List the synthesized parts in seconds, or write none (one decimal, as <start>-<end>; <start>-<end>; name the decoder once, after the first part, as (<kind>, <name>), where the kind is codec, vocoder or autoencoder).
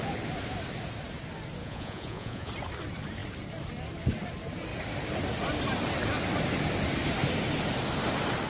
1.6-2.5 (vocoder, Vocos)